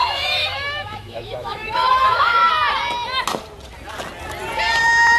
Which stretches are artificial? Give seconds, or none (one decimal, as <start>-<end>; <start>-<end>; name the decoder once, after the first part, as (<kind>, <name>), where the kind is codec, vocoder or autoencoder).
0.0-2.5 (autoencoder, DAC-VAE)